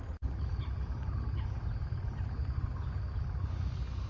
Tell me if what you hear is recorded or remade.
recorded